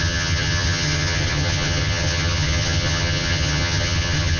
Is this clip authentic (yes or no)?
no